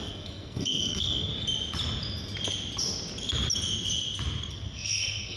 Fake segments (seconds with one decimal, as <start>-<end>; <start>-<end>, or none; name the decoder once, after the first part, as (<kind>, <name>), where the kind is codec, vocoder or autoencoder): 0.0-1.3 (codec, SNAC); 4.5-5.4

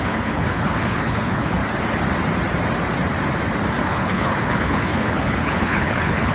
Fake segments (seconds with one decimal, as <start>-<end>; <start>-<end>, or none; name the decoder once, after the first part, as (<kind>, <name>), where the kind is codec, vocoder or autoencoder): 0.0-1.6 (codec, HILCodec); 3.8-6.3